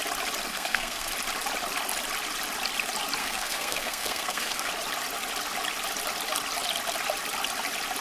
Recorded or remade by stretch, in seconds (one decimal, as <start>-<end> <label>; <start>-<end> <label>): 0.0-0.5 recorded; 0.5-1.1 remade; 1.1-3.2 recorded; 3.2-4.7 remade; 4.7-8.0 recorded